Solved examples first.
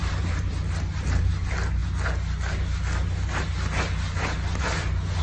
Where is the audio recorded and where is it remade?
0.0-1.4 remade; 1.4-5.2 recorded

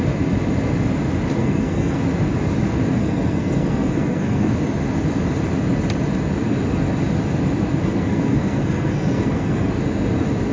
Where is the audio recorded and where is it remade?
0.0-1.4 recorded; 1.4-2.0 remade; 2.0-3.0 recorded; 3.0-4.5 remade; 4.5-7.8 recorded; 7.8-9.7 remade; 9.7-10.5 recorded

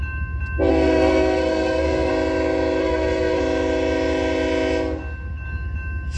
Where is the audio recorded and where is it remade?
0.0-0.7 recorded; 0.7-2.1 remade; 2.1-2.8 recorded; 2.8-3.4 remade; 3.4-6.2 recorded

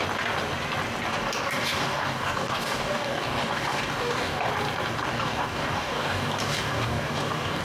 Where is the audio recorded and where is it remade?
0.0-1.1 recorded; 1.1-4.5 remade; 4.5-5.1 recorded; 5.1-7.6 remade

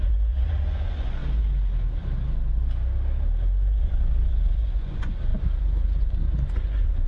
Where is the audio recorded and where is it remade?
0.0-1.2 remade; 1.2-3.8 recorded; 3.8-7.1 remade

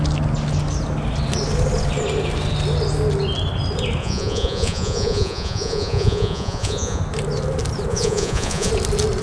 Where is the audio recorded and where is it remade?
0.0-4.0 recorded; 4.0-7.0 remade; 7.0-7.9 recorded; 7.9-8.7 remade; 8.7-9.2 recorded

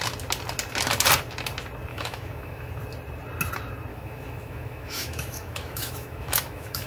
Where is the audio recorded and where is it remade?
0.0-1.9 recorded; 1.9-2.7 remade; 2.7-3.9 recorded; 3.9-6.9 remade